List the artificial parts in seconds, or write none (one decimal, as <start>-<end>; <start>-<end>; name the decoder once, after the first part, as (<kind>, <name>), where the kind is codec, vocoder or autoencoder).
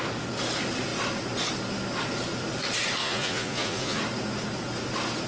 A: 3.0-4.0 (vocoder, Vocos)